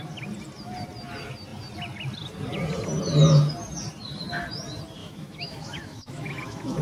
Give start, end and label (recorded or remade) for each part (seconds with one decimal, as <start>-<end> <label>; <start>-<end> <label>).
0.0-5.0 recorded; 5.0-6.8 remade